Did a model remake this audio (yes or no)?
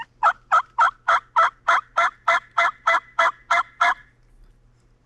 no